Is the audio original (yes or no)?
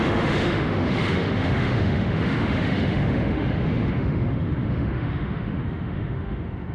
no